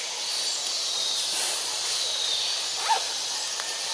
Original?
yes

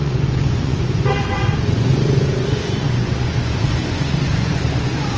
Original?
no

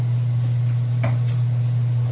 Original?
yes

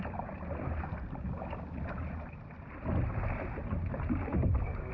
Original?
yes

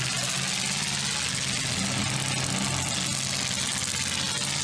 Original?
yes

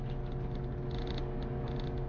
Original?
yes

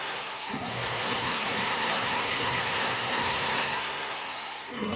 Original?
no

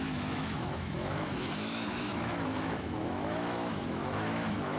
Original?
no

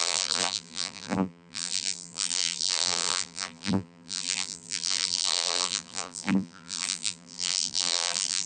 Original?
no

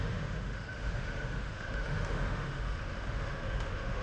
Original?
no